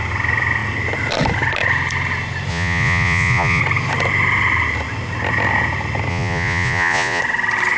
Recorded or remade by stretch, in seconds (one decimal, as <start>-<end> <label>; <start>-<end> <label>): 0.0-2.5 recorded; 2.5-3.6 remade; 3.6-6.1 recorded; 6.1-7.2 remade; 7.2-7.8 recorded